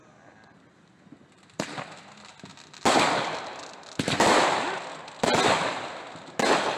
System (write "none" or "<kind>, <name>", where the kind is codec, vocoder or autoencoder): none